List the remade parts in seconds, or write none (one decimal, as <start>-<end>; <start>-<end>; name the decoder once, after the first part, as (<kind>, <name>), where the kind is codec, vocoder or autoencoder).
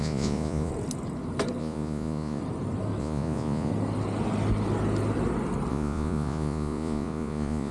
0.0-0.7 (vocoder, Vocos); 1.6-2.4; 3.0-3.7; 5.7-7.7